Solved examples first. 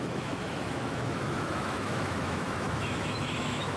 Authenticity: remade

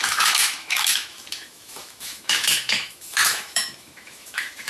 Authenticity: remade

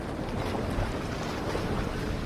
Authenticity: recorded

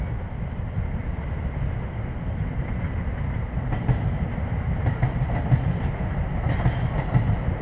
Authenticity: recorded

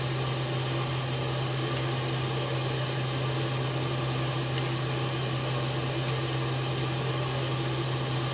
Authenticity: recorded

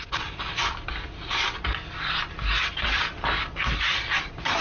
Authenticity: recorded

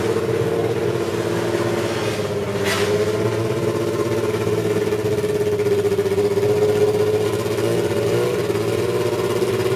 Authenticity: recorded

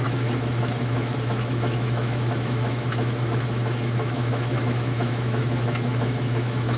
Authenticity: remade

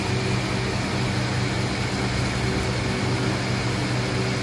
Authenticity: recorded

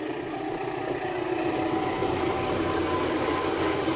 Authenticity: recorded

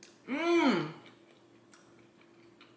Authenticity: recorded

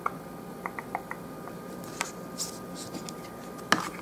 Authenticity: recorded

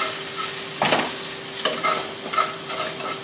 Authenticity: recorded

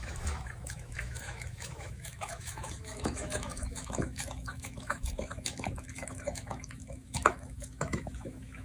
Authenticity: remade